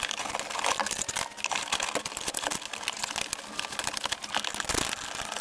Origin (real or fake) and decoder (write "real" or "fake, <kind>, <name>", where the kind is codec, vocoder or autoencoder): real